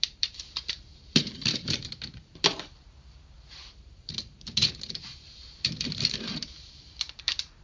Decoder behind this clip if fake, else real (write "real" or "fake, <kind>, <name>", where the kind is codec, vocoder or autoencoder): fake, vocoder, BigVGAN v2